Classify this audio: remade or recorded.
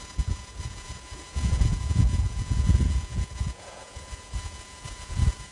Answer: remade